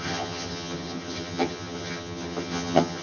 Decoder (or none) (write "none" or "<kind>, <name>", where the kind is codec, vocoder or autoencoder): vocoder, HiFi-GAN